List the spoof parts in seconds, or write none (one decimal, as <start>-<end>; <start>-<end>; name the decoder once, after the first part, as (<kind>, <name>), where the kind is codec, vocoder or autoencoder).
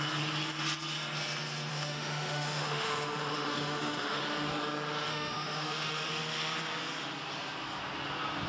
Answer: 1.7-4.2 (autoencoder, DAC-VAE); 5.1-6.1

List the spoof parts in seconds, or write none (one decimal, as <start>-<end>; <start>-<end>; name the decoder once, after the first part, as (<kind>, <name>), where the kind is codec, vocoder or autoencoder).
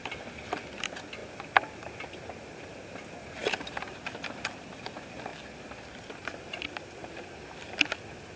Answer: none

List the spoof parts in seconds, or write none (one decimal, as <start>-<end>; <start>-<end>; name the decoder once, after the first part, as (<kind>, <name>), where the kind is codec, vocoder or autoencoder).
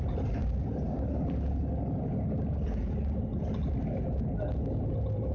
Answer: none